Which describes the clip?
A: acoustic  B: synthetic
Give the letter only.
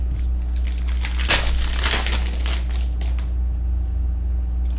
A